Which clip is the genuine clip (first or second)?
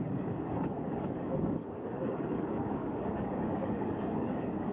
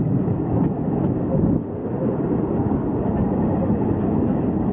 second